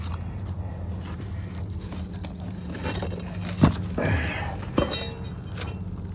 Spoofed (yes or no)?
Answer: no